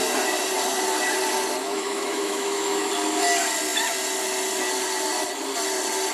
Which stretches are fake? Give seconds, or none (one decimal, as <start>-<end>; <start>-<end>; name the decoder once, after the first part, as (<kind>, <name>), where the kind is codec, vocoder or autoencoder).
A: 1.6-2.9 (autoencoder, DAC-VAE)